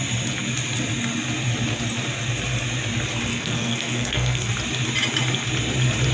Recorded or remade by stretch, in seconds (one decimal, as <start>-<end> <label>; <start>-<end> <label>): 0.0-3.3 recorded; 3.3-4.5 remade; 4.5-6.1 recorded